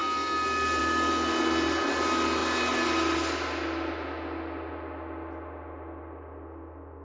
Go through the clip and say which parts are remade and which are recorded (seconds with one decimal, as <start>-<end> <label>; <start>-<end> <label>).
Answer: 0.0-7.0 recorded